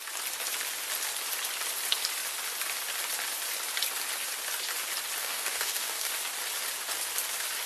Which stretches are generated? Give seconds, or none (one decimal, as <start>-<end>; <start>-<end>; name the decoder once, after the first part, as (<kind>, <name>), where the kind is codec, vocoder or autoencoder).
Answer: 5.2-6.1 (codec, DAC)